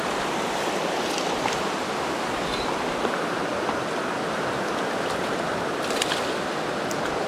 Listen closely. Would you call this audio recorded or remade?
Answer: recorded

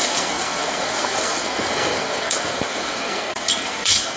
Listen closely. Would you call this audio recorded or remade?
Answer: remade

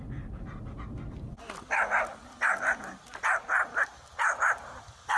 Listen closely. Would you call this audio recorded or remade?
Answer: recorded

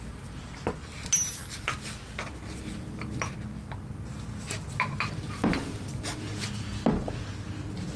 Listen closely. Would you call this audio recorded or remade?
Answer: recorded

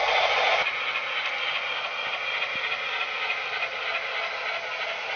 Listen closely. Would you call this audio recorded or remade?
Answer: recorded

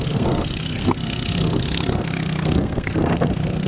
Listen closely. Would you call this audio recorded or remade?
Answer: remade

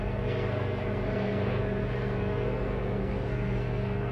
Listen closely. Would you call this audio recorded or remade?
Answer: remade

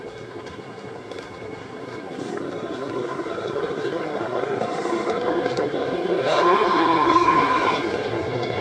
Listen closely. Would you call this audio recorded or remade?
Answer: remade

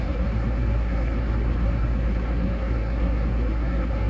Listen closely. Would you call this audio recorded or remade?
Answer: remade